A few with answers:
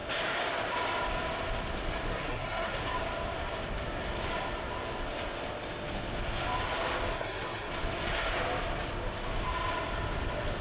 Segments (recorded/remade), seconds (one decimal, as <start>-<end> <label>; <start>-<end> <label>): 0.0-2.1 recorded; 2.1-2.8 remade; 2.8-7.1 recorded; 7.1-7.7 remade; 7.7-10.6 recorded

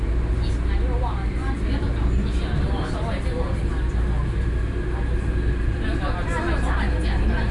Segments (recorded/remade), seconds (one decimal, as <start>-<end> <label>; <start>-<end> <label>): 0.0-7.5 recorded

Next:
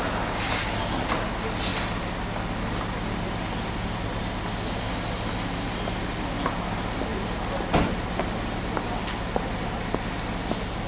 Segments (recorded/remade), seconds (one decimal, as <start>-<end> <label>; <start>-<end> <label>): 0.0-10.9 recorded

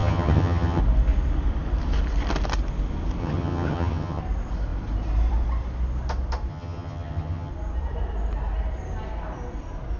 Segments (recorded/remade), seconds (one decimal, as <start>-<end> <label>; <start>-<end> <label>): 0.0-0.8 remade; 0.8-3.2 recorded; 3.2-4.2 remade; 4.2-6.5 recorded; 6.5-7.5 remade; 7.5-10.0 recorded

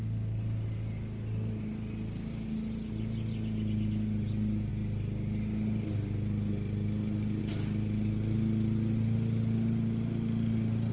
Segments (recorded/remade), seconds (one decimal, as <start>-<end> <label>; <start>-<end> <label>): 0.0-10.9 recorded